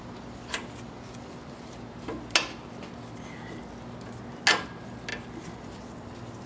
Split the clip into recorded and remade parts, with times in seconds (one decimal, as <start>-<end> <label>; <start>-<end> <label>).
0.0-6.5 recorded